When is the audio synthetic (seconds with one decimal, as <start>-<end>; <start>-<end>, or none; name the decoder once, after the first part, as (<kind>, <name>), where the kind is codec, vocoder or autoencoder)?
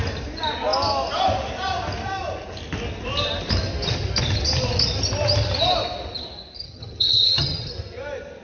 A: 6.6-7.7 (vocoder, HiFi-GAN)